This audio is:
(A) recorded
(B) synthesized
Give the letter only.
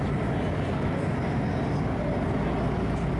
A